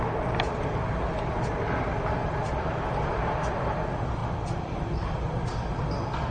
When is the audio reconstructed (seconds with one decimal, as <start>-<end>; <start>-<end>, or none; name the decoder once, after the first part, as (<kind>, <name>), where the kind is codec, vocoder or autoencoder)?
2.2-3.1 (vocoder, BigVGAN v2)